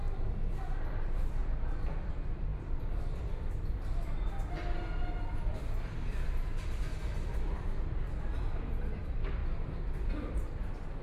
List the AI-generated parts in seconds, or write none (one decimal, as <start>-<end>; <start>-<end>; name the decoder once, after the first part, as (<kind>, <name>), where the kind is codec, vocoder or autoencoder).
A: 0.0-1.4 (vocoder, BigVGAN v2); 2.1-11.0